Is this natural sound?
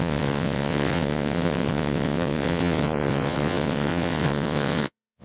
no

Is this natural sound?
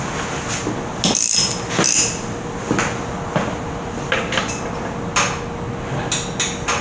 yes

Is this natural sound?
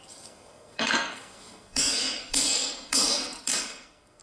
no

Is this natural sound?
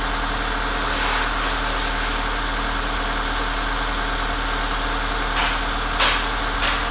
yes